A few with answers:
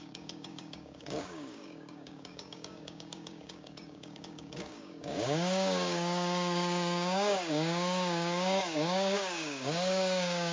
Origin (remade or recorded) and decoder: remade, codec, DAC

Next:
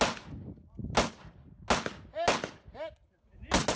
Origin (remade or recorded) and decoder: recorded